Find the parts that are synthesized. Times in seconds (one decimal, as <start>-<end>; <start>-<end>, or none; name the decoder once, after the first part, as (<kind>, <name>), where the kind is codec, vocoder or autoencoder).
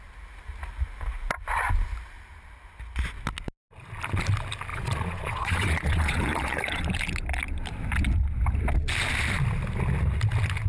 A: 4.7-6.8 (vocoder, Vocos)